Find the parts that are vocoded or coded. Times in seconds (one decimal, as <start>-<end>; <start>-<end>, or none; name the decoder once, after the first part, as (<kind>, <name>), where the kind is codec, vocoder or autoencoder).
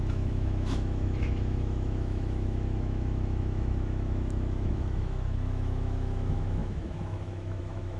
0.0-8.0 (autoencoder, DAC-VAE)